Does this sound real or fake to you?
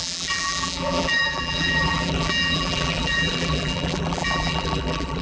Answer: fake